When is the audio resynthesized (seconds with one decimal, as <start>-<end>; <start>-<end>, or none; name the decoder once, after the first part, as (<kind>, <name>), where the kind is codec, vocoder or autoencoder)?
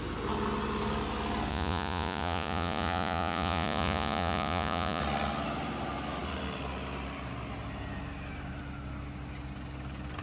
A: 1.5-5.0 (vocoder, Vocos)